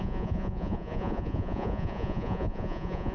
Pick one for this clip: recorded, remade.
remade